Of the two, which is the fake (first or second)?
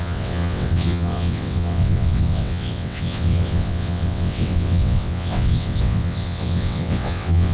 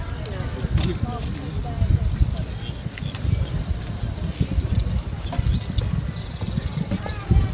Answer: first